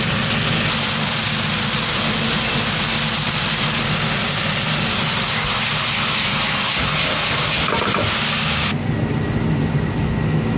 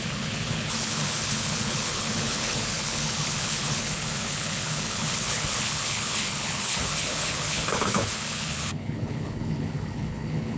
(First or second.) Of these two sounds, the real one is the first